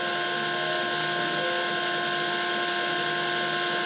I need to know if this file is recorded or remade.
recorded